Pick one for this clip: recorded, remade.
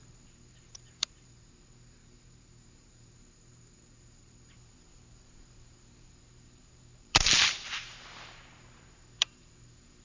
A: remade